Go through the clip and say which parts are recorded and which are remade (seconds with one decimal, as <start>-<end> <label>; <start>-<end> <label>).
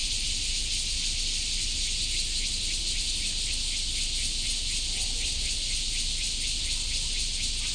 0.0-7.7 recorded